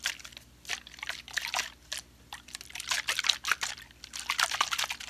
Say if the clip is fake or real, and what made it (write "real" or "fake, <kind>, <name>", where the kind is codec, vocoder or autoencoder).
real